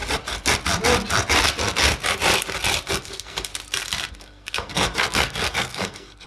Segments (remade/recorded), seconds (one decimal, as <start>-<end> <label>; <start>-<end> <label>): 0.0-2.9 recorded; 2.9-3.5 remade; 3.5-4.1 recorded; 4.1-6.3 remade